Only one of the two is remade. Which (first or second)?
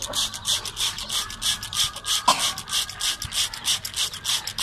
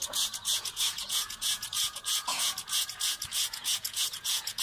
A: second